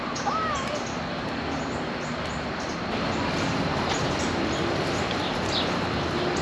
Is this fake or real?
real